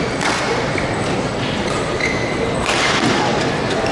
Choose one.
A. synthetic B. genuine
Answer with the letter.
B